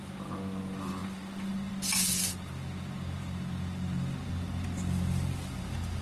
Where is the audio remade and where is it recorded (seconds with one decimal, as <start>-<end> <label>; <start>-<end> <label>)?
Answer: 0.0-6.0 recorded